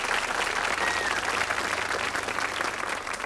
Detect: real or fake real